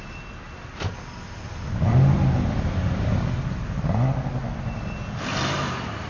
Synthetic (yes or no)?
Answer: no